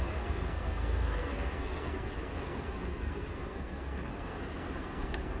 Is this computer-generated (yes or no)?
yes